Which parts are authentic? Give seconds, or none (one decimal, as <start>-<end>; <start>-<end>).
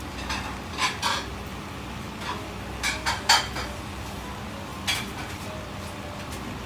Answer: 0.0-6.7